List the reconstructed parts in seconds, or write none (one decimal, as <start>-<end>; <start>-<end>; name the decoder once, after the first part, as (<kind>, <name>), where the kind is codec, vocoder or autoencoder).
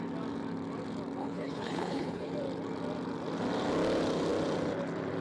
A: 1.2-2.3 (codec, HILCodec)